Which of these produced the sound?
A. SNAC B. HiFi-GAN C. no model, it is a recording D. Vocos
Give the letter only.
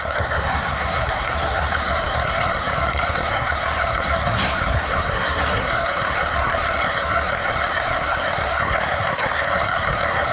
A